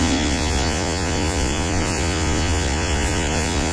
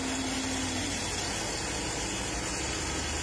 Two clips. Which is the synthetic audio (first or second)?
first